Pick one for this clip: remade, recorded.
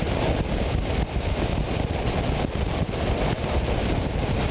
remade